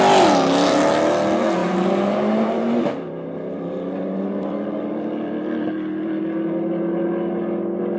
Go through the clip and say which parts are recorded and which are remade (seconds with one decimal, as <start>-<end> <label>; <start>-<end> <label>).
0.0-1.6 recorded; 1.6-6.2 remade; 6.2-8.0 recorded

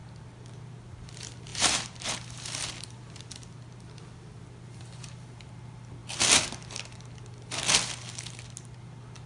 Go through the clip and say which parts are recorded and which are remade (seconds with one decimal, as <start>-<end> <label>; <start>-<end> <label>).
0.0-1.5 recorded; 1.5-3.0 remade; 3.0-5.0 recorded; 5.0-5.5 remade; 5.5-9.3 recorded